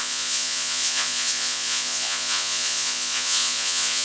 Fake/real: fake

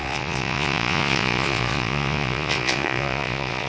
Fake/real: fake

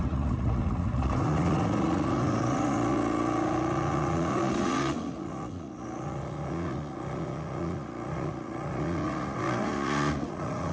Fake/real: fake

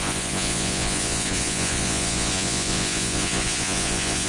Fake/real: fake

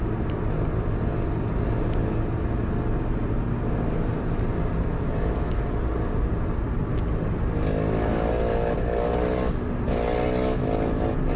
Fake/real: real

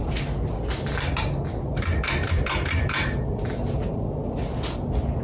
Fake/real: real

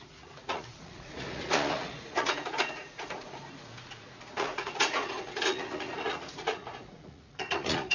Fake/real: fake